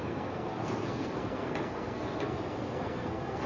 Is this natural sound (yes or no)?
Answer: no